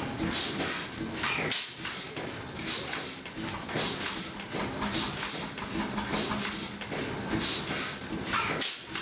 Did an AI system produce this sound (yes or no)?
no